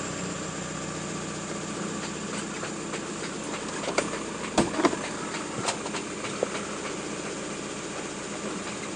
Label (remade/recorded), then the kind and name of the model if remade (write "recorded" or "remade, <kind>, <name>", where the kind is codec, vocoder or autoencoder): recorded